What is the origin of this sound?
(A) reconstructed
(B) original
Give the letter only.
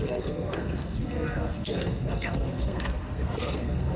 A